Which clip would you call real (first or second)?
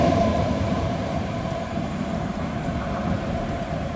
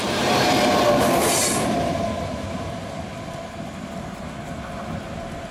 second